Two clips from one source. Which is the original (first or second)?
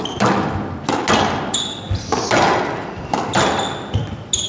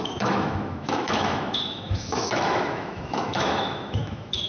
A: first